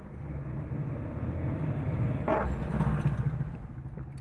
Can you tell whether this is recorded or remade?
recorded